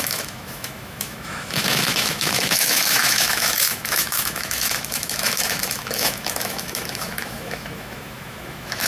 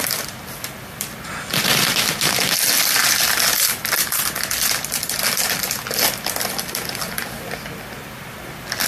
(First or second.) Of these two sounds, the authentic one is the second